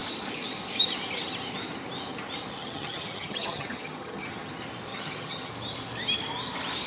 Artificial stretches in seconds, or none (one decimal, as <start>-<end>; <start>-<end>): 2.6-4.5; 4.9-5.5